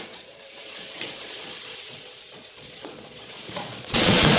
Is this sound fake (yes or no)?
yes